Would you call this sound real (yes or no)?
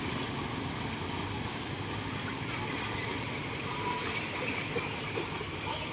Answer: yes